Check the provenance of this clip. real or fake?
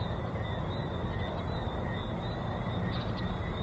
real